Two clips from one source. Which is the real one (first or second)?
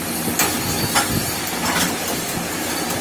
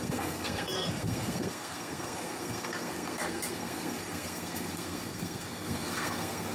first